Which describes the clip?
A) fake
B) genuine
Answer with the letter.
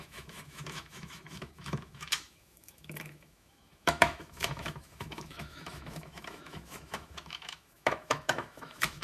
A